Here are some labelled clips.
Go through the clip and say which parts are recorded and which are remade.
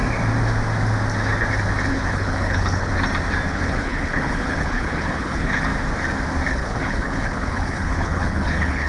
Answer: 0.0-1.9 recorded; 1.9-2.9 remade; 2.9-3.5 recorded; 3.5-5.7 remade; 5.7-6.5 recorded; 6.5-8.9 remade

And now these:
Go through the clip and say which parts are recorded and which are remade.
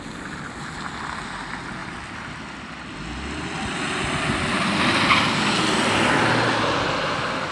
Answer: 0.0-7.5 recorded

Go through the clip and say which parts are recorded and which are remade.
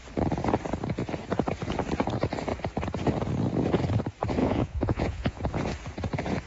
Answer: 0.0-4.4 recorded; 4.4-5.5 remade; 5.5-6.5 recorded